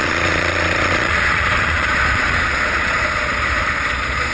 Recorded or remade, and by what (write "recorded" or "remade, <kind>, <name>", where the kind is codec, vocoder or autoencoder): remade, vocoder, Vocos